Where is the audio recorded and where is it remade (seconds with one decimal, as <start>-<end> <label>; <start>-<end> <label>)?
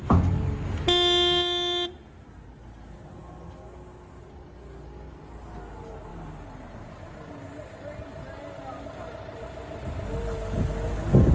0.0-11.3 recorded